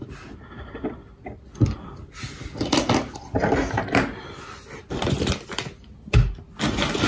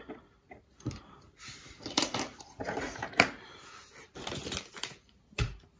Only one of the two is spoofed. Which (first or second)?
second